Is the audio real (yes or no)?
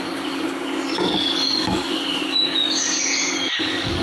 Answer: no